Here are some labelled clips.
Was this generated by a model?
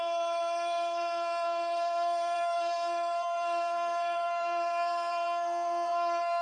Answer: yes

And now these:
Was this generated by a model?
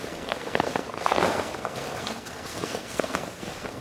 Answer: yes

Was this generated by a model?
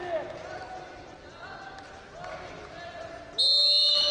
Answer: no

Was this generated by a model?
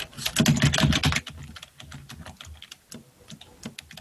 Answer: no